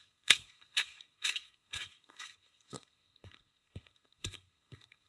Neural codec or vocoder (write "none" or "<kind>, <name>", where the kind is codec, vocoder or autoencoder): codec, SNAC